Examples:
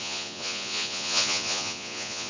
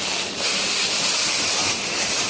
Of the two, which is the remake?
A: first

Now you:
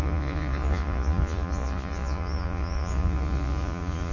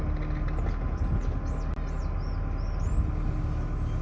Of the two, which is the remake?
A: first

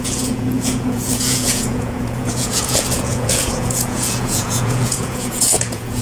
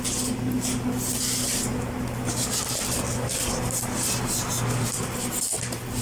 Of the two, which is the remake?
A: first